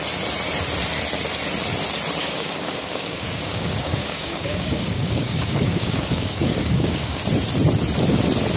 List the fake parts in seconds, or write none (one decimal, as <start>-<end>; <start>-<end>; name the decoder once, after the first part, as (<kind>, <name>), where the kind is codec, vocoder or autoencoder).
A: 2.2-7.2 (codec, DAC)